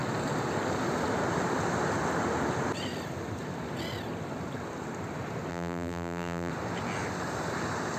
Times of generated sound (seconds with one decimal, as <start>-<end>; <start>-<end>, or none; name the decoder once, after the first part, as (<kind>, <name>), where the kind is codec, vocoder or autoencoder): 5.5-6.5 (vocoder, BigVGAN v2)